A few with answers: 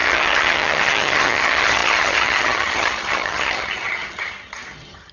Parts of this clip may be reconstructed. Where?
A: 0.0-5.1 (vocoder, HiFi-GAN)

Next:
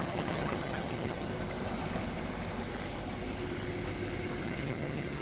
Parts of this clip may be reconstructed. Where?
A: 0.0-1.3 (vocoder, HiFi-GAN); 4.4-5.2

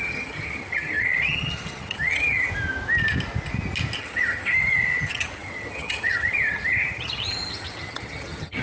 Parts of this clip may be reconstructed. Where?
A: 0.0-2.5 (vocoder, HiFi-GAN); 4.0-8.6

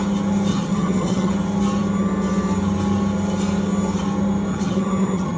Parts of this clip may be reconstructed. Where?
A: 0.5-1.3 (vocoder, HiFi-GAN); 4.5-5.4

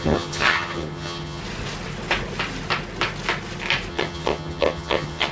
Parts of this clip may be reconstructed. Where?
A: 0.0-1.4 (vocoder, HiFi-GAN); 3.9-5.3

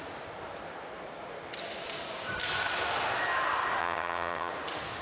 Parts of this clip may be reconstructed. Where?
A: 3.8-4.5 (vocoder, HiFi-GAN)

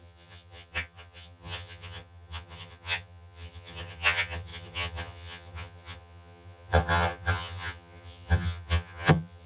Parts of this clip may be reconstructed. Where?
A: 0.0-9.5 (vocoder, HiFi-GAN)

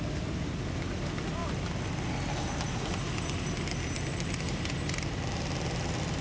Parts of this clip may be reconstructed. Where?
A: none